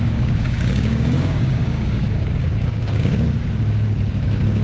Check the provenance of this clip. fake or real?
fake